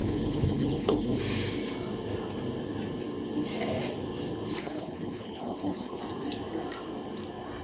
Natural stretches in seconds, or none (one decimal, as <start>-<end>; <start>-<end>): 1.2-4.6; 6.0-7.6